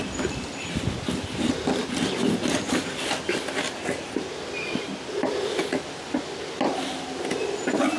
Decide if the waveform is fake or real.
real